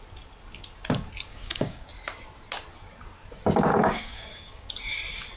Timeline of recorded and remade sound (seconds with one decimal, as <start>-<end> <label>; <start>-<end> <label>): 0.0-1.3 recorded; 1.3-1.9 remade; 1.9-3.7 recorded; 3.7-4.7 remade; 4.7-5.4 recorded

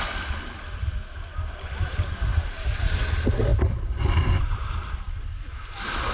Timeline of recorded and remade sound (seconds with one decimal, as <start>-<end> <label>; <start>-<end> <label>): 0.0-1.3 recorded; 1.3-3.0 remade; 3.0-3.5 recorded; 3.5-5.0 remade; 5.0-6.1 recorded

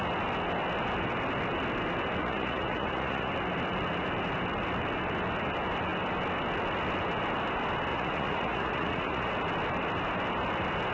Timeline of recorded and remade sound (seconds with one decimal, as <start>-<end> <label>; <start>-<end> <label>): 0.0-2.2 recorded; 2.2-3.3 remade; 3.3-7.9 recorded; 7.9-9.3 remade; 9.3-10.9 recorded

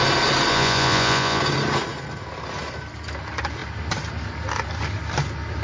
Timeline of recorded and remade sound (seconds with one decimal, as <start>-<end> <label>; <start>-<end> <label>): 0.0-0.5 recorded; 0.5-1.4 remade; 1.4-5.6 recorded

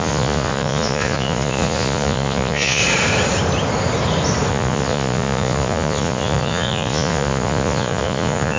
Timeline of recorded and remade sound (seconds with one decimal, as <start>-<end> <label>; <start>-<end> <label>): 0.0-2.8 remade; 2.8-4.5 recorded; 4.5-8.6 remade

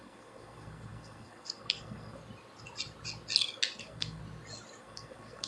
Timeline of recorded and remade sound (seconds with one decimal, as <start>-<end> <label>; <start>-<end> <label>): 0.0-2.2 remade; 2.2-3.8 recorded; 3.8-4.2 remade; 4.2-4.8 recorded; 4.8-5.5 remade